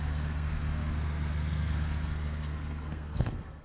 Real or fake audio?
fake